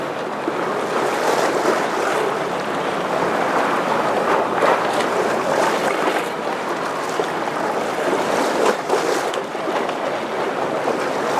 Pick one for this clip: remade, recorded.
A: recorded